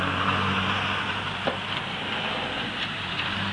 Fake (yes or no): no